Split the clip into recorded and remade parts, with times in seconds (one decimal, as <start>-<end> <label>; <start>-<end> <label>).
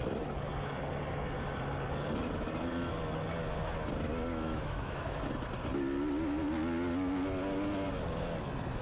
0.0-4.3 recorded; 4.3-5.2 remade; 5.2-8.8 recorded